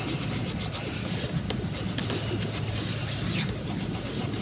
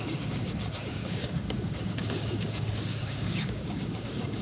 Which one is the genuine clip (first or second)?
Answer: first